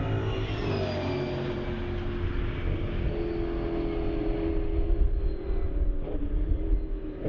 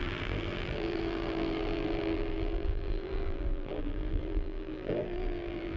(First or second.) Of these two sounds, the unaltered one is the first